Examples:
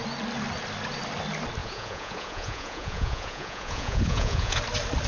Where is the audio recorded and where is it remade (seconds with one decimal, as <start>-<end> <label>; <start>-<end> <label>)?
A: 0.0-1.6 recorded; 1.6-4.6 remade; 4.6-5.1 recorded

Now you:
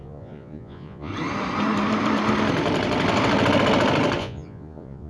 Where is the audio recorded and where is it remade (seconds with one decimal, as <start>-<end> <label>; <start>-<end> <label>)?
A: 0.0-1.1 remade; 1.1-4.2 recorded; 4.2-5.1 remade

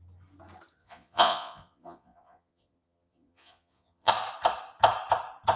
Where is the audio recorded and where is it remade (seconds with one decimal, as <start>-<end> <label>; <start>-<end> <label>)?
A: 0.0-0.8 recorded; 0.8-4.1 remade; 4.1-5.6 recorded

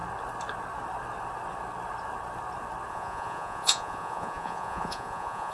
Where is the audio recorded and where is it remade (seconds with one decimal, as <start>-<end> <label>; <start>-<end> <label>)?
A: 0.0-2.9 recorded; 2.9-5.5 remade